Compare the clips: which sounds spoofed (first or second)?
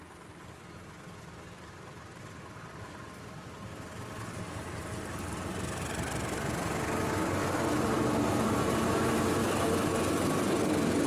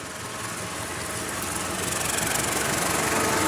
first